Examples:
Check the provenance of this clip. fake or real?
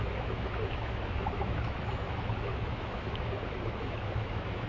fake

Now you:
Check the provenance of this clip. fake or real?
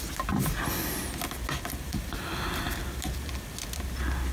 real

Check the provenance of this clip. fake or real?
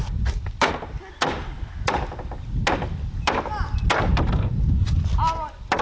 real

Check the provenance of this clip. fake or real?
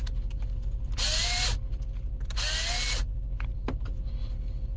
real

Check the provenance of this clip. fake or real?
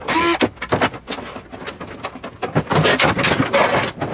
real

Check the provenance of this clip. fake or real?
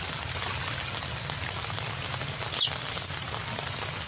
real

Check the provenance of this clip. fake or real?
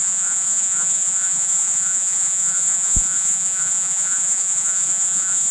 fake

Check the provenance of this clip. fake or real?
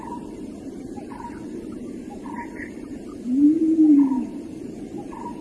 fake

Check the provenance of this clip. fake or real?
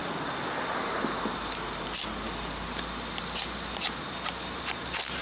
real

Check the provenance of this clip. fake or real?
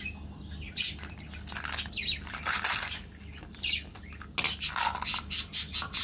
real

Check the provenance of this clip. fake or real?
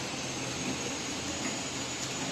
real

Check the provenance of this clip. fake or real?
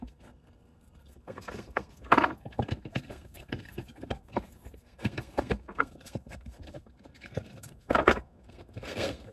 fake